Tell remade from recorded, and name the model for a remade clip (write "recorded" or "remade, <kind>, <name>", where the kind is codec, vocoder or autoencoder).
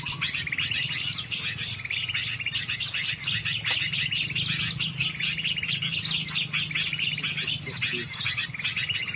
recorded